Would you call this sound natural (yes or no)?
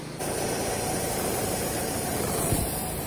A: no